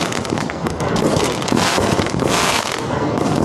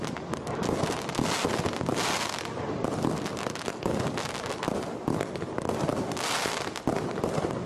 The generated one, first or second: first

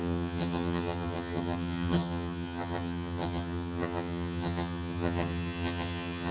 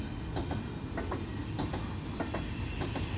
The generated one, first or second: first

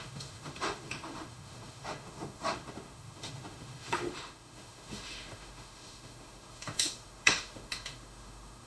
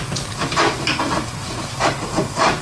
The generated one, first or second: first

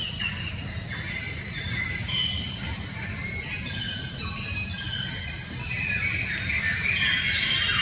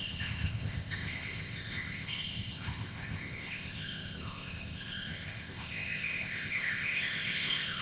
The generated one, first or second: second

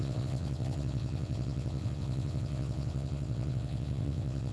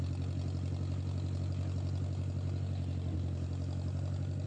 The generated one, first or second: first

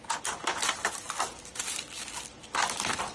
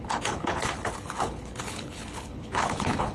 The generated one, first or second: second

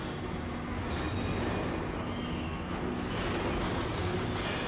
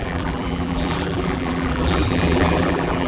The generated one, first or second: second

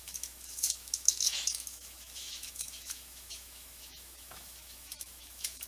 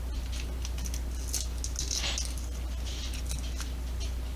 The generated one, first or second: first